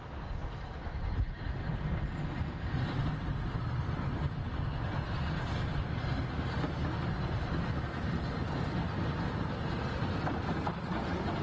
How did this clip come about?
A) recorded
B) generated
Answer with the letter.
A